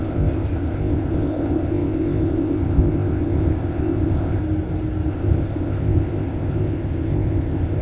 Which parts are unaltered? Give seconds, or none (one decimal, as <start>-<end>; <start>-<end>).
4.4-5.1